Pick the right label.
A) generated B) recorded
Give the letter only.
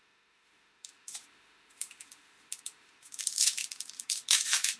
A